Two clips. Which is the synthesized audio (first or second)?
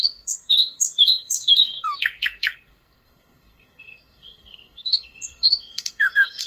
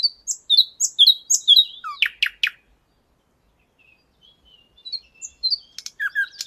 first